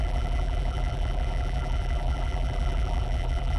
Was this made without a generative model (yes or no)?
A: no